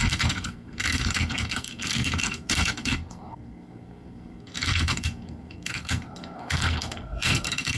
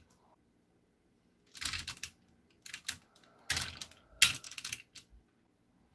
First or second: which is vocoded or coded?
first